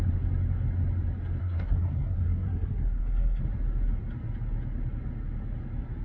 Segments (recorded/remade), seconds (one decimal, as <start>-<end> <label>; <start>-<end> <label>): 0.0-1.4 recorded; 1.4-3.4 remade; 3.4-6.0 recorded